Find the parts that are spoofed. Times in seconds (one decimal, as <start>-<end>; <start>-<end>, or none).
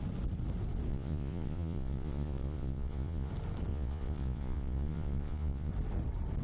0.9-3.3; 3.7-5.7